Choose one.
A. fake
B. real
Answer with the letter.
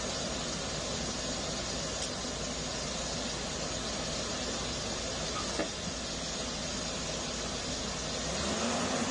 B